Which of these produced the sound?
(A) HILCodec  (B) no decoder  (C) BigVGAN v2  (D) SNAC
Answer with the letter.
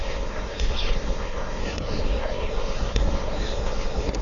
D